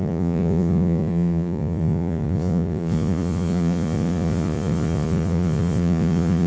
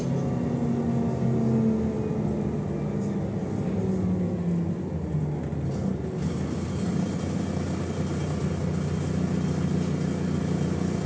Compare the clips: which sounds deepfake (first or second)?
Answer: first